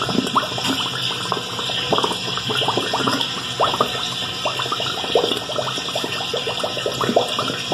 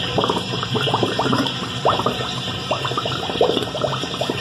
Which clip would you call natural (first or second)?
first